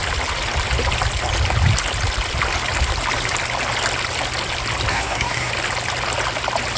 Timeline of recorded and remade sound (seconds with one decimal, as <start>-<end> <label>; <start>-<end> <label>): 0.0-4.9 recorded; 4.9-5.5 remade; 5.5-6.8 recorded